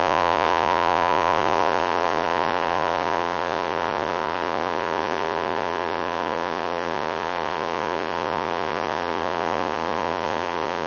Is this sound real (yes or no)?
no